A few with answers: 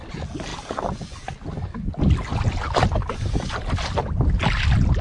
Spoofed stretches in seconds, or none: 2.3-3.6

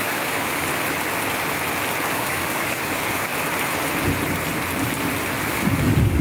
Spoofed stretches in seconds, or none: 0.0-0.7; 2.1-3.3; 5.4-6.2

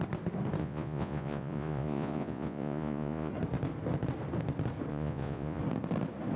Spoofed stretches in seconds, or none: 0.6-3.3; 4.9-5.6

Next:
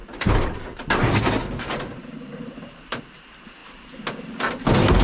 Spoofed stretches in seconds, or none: 0.0-3.0